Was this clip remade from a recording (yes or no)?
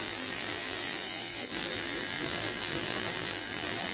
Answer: yes